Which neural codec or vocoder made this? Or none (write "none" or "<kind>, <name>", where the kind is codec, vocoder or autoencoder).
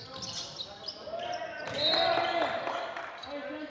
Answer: none